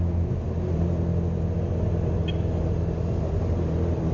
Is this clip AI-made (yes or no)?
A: no